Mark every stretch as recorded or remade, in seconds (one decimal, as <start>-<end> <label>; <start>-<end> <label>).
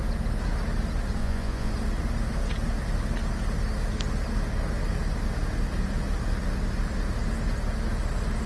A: 0.0-1.2 recorded; 1.2-1.7 remade; 1.7-8.5 recorded